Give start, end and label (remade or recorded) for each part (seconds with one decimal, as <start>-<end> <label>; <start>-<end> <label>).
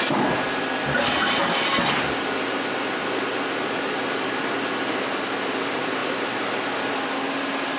0.0-7.8 recorded